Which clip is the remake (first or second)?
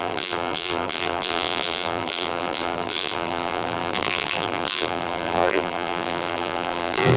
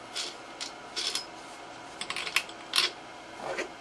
first